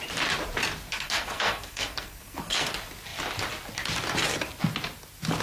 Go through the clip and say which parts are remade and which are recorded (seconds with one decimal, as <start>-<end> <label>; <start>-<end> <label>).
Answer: 0.0-0.9 recorded; 0.9-2.7 remade; 2.7-5.4 recorded